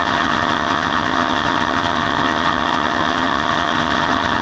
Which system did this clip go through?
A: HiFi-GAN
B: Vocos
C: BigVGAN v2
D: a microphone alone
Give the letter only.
A